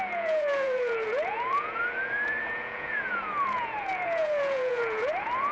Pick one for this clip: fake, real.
fake